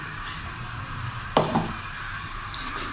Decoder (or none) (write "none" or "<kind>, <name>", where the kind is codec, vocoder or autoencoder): vocoder, BigVGAN v2